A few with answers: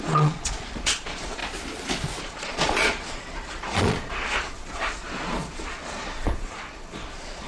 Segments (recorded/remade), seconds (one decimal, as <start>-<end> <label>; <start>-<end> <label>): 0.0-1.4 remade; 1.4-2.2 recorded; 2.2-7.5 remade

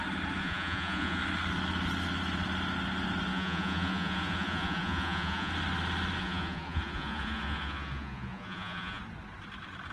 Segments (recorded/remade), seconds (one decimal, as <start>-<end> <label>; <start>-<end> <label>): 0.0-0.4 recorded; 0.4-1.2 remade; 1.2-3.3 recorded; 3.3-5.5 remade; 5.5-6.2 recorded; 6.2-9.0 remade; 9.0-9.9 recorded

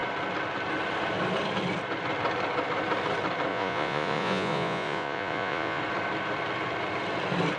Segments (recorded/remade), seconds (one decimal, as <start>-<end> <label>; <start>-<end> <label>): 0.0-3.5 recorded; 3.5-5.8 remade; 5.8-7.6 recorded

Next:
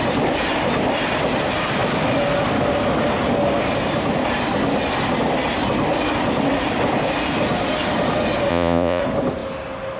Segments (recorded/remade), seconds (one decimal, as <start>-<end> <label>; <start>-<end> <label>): 0.0-8.5 recorded; 8.5-9.0 remade; 9.0-10.0 recorded

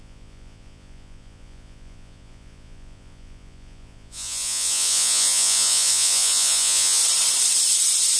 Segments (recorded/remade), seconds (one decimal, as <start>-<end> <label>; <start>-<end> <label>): 0.0-7.0 remade; 7.0-8.2 recorded

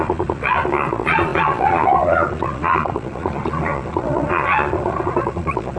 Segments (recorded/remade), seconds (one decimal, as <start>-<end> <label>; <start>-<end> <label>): 0.0-5.8 remade